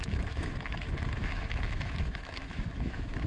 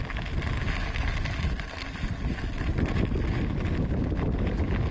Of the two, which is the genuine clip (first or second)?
second